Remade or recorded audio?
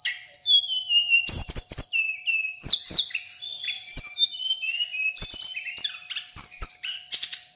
recorded